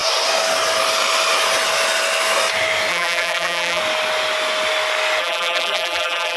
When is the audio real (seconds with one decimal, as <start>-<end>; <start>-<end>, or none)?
0.0-2.9; 3.8-5.2